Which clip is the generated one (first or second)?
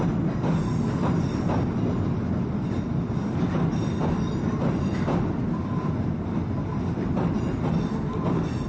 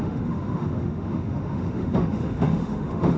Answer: second